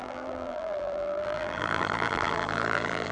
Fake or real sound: fake